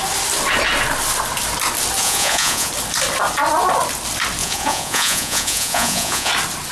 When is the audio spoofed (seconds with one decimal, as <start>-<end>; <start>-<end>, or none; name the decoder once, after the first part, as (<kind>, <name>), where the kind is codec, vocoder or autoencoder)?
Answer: 2.0-2.7 (vocoder, Vocos); 4.4-6.3